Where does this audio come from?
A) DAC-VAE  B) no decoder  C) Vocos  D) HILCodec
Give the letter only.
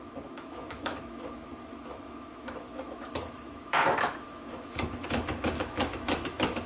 A